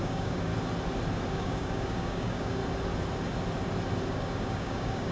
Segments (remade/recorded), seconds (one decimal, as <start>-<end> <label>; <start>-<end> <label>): 0.0-0.5 remade; 0.5-1.3 recorded; 1.3-2.6 remade; 2.6-4.1 recorded; 4.1-5.1 remade